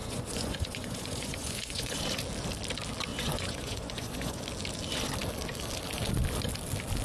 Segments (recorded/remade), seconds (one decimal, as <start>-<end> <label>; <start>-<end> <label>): 0.0-2.0 remade; 2.0-3.1 recorded; 3.1-4.4 remade; 4.4-7.0 recorded